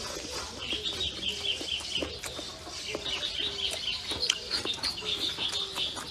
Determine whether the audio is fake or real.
real